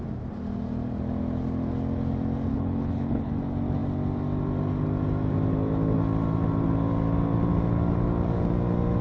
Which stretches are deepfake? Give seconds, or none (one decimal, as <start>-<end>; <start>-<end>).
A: 2.5-3.3